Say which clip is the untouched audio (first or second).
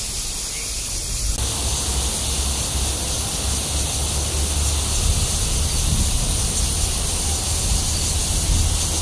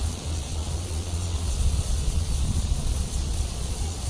first